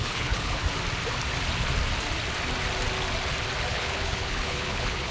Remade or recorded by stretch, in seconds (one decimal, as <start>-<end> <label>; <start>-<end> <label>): 0.0-0.6 remade; 0.6-3.7 recorded; 3.7-5.1 remade